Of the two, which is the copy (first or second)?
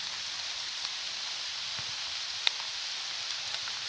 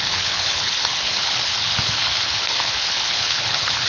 second